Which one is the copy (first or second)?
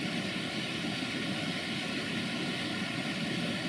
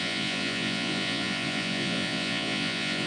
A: second